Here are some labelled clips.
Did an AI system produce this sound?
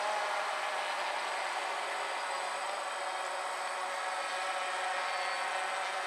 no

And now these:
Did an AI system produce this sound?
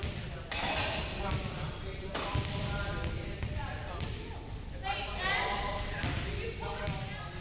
yes